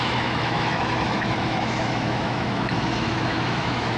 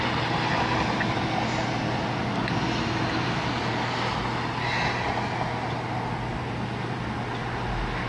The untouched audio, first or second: second